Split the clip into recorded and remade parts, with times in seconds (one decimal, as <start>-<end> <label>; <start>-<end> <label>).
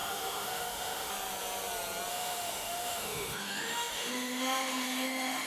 0.0-1.1 remade; 1.1-2.1 recorded; 2.1-5.5 remade